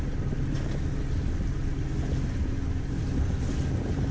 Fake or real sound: real